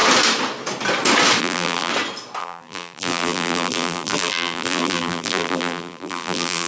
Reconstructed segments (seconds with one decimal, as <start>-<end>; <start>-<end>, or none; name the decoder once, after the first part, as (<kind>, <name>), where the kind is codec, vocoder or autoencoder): 1.4-1.9 (vocoder, BigVGAN v2); 2.4-6.7

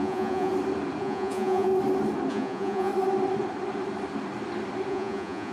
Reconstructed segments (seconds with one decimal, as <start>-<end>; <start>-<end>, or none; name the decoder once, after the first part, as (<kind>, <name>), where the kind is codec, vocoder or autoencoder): 0.0-0.5 (vocoder, Vocos); 1.0-1.7; 2.3-2.9; 4.9-5.5

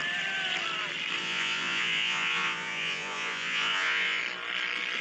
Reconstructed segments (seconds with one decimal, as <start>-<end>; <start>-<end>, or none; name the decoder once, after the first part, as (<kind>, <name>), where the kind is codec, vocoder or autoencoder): 1.2-4.2 (vocoder, Vocos)

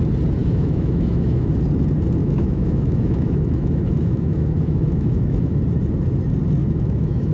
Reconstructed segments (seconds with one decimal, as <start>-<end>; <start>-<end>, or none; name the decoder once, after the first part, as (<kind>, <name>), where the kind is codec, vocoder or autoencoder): 0.4-1.5 (autoencoder, DAC-VAE); 2.2-5.6; 6.6-7.3

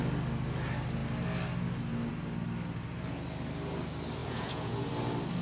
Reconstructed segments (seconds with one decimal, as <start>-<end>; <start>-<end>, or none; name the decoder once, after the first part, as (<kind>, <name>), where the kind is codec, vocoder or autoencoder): 4.2-4.9 (vocoder, Vocos)

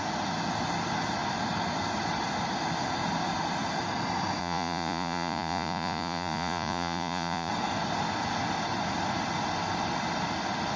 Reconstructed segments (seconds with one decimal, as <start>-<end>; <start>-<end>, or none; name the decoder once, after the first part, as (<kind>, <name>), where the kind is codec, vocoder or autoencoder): 4.4-7.5 (vocoder, Vocos)

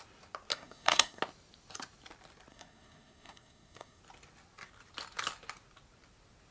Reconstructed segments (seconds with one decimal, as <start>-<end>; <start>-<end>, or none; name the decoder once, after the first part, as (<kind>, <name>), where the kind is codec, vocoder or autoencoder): 0.5-1.2 (codec, SNAC); 2.5-4.0